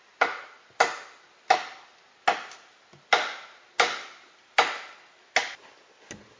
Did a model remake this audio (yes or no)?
no